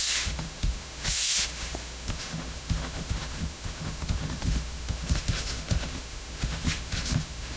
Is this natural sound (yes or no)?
no